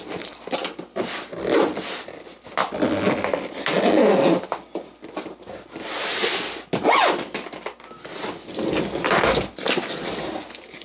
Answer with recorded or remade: recorded